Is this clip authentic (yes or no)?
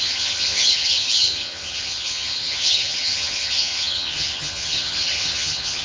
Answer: no